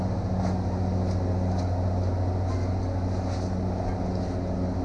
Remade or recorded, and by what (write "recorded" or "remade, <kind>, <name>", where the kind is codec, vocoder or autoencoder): recorded